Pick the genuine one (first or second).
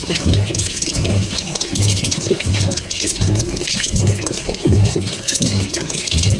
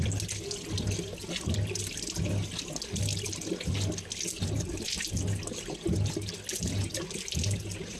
second